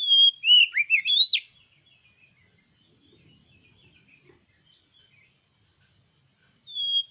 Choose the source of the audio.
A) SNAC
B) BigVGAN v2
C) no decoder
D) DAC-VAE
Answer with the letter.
C